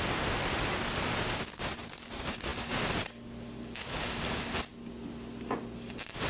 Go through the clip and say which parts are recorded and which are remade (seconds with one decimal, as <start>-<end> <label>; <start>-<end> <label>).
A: 0.0-6.3 recorded